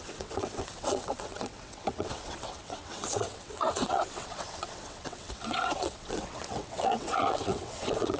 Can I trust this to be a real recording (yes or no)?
no